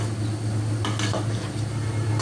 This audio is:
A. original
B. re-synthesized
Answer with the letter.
A